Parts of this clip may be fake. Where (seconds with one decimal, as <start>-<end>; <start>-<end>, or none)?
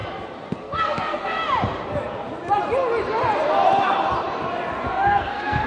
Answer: 0.6-1.4; 4.8-5.7